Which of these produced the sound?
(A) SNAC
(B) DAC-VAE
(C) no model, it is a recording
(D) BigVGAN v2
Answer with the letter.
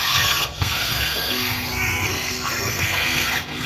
A